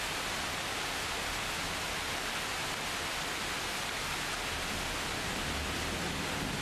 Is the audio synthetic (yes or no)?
no